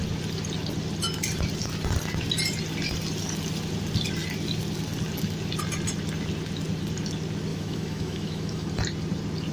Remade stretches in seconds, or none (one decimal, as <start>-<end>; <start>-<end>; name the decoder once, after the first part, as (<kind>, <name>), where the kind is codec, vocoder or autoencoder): 7.5-8.7 (autoencoder, DAC-VAE)